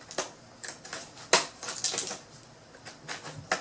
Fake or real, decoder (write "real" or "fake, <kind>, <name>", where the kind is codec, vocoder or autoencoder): real